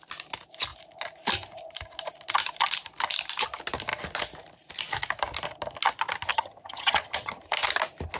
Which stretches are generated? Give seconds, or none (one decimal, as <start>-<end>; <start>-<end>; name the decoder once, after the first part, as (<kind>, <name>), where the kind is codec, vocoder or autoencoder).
6.3-7.4 (vocoder, HiFi-GAN)